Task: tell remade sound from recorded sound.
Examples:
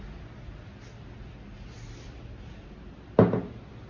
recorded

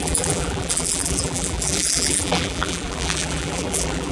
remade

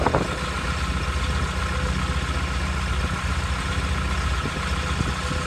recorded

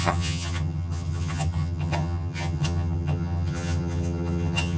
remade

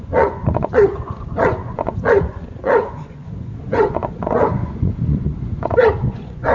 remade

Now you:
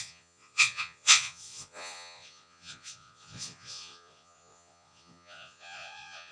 remade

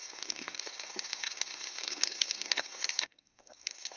remade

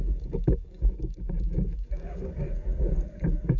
remade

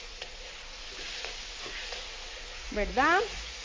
remade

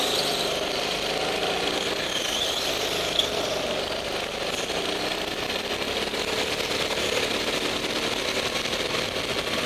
recorded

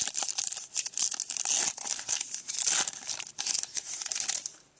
recorded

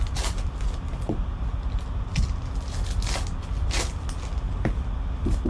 recorded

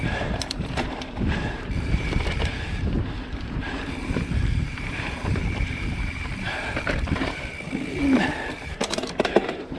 remade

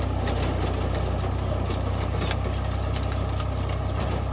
recorded